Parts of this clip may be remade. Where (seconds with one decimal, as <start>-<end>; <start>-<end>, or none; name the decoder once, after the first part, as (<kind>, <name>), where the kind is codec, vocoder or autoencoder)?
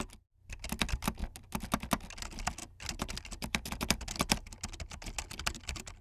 none